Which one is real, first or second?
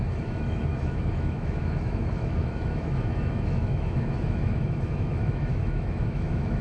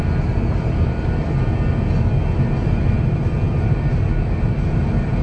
second